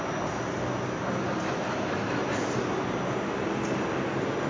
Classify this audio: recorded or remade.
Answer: recorded